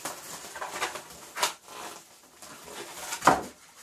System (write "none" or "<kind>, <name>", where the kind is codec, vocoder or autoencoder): none